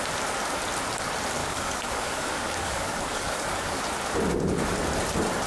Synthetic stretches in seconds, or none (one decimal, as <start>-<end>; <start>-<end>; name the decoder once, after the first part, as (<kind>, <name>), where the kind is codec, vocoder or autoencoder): 1.4-3.8 (codec, DAC)